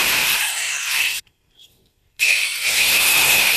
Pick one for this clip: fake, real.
fake